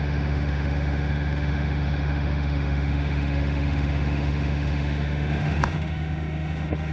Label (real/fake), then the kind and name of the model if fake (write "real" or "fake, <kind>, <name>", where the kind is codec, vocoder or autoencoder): fake, autoencoder, DAC-VAE